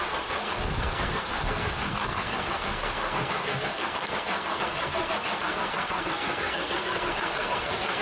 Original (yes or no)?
no